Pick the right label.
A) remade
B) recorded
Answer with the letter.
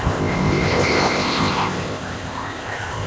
A